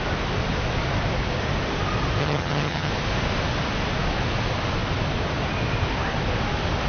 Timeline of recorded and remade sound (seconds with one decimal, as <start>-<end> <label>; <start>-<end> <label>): 0.0-2.2 recorded; 2.2-2.9 remade; 2.9-6.9 recorded